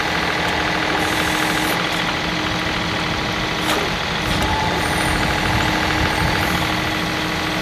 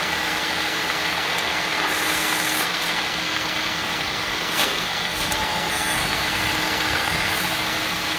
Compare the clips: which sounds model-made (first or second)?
second